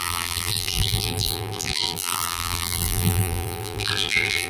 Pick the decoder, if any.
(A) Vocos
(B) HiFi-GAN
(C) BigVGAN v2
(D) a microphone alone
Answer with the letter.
C